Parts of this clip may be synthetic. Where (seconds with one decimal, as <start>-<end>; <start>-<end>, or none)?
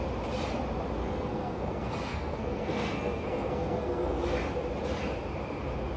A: 1.0-4.2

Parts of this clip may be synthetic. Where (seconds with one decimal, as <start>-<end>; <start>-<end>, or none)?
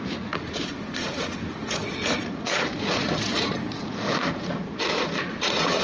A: 0.0-5.8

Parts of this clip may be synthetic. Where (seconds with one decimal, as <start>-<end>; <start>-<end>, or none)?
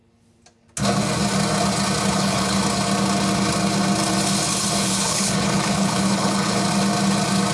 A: 2.1-2.6; 4.8-6.6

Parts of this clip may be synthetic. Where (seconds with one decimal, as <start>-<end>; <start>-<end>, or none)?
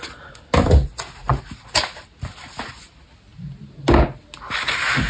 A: none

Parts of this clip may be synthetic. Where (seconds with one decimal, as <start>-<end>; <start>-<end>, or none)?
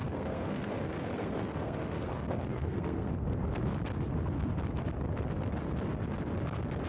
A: 0.0-3.1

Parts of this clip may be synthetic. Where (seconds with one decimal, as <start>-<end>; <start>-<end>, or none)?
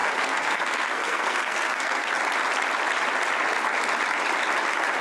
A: 0.0-2.1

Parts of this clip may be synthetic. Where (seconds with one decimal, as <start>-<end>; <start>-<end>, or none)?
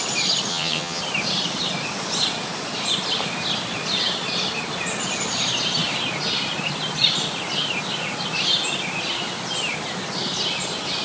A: 0.5-1.0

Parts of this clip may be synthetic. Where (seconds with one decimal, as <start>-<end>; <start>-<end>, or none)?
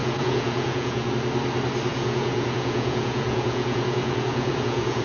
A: 0.0-1.1; 1.9-5.0